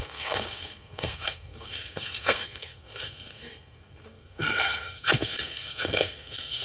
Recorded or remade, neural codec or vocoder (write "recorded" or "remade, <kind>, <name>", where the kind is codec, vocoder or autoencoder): remade, codec, SNAC